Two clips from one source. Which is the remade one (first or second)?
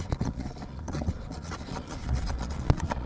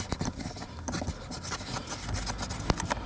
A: first